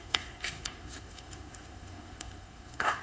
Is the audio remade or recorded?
remade